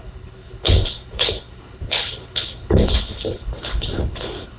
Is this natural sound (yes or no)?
no